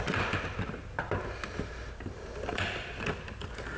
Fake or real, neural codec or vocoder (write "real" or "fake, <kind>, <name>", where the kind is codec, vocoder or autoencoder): real